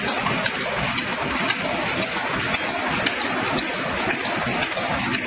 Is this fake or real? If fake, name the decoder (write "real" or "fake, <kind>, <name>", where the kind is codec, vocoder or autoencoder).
real